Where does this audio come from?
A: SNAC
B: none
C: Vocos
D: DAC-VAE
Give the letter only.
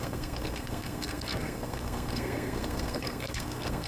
A